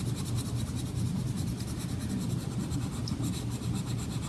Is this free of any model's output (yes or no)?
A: yes